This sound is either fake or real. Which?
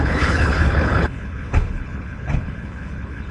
fake